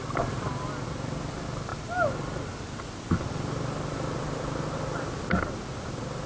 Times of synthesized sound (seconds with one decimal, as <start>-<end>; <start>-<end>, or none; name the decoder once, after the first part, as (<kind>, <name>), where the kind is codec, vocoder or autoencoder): none